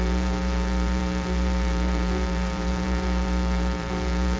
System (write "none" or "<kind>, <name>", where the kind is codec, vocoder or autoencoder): vocoder, BigVGAN v2